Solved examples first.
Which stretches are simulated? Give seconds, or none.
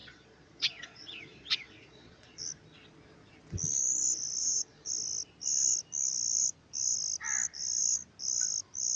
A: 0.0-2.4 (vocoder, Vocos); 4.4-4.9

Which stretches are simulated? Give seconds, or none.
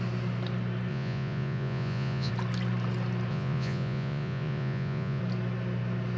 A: 0.9-2.3 (vocoder, Vocos); 3.3-5.2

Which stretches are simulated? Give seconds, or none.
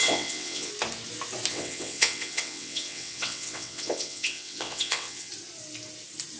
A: 0.0-0.7 (vocoder, WaveNeXt); 1.5-5.3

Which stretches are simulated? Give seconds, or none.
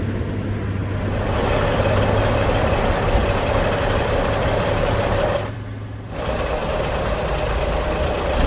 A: 0.0-6.6 (vocoder, BigVGAN v2); 7.3-8.5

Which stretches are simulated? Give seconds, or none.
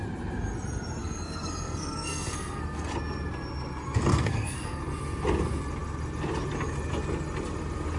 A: 1.0-2.9 (codec, SNAC); 4.1-4.8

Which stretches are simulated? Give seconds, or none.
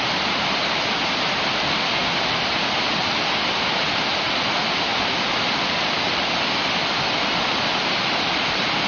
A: none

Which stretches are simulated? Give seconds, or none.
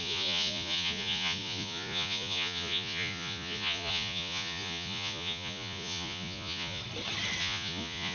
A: 0.0-6.8 (vocoder, Vocos); 7.4-8.1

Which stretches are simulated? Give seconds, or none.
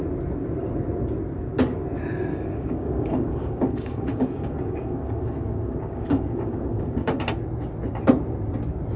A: 2.3-7.2 (codec, DAC)